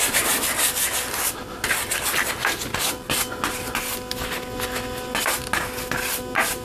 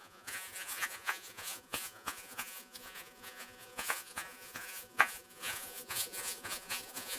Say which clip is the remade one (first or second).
second